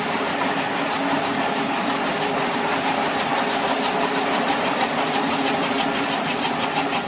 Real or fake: real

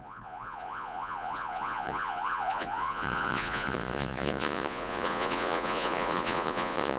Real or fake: fake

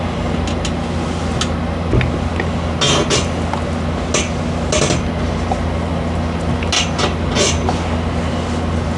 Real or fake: real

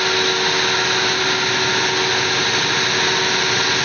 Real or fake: real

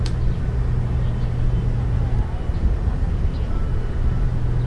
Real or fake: real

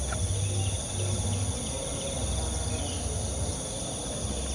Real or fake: real